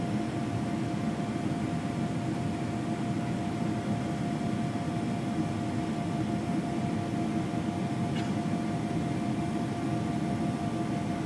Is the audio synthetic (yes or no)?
no